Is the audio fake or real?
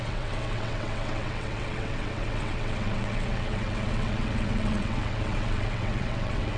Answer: fake